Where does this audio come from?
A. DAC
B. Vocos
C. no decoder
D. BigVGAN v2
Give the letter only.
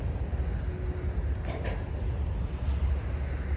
C